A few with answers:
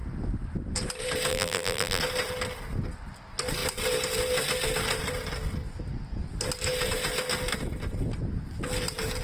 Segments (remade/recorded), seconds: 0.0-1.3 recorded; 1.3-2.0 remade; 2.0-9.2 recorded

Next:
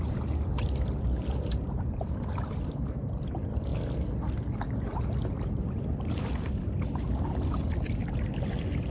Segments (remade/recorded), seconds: 0.0-3.7 remade; 3.7-5.5 recorded; 5.5-8.9 remade

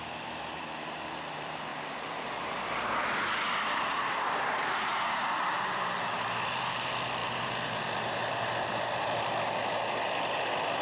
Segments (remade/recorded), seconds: 0.0-1.7 remade; 1.7-2.4 recorded; 2.4-4.9 remade; 4.9-5.4 recorded; 5.4-10.8 remade